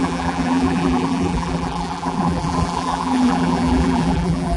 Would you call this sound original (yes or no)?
no